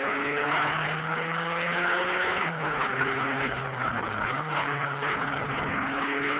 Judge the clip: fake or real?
fake